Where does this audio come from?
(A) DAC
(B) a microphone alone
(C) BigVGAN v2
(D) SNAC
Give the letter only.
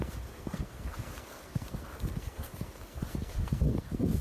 D